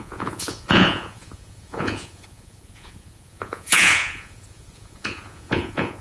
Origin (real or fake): fake